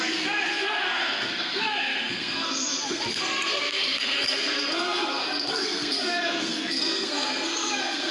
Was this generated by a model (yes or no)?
yes